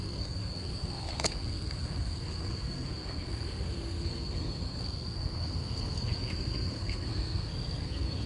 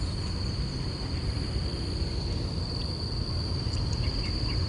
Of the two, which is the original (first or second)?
second